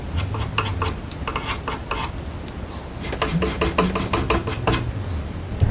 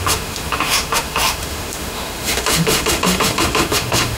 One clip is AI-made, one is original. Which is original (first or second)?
first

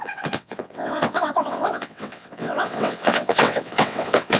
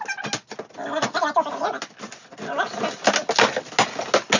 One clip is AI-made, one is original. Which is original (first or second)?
second